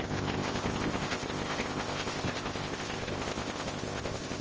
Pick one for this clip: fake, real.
fake